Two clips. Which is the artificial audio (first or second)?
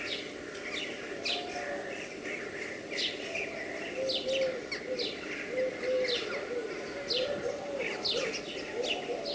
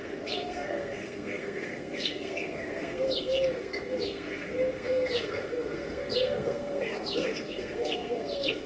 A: second